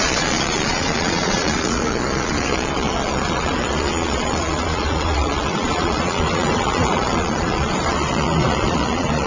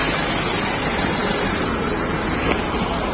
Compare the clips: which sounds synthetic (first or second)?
first